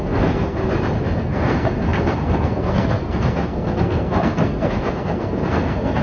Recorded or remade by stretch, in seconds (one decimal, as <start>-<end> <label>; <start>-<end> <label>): 0.0-0.6 remade; 0.6-1.2 recorded; 1.2-6.0 remade